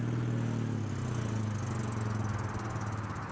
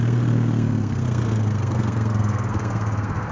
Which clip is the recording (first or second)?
first